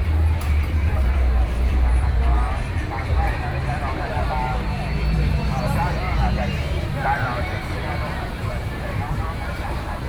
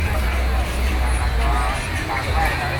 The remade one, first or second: first